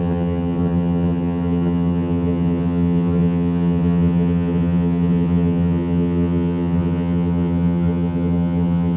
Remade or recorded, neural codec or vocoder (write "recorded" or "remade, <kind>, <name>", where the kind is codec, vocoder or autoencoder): remade, vocoder, HiFi-GAN